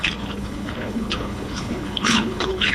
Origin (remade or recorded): remade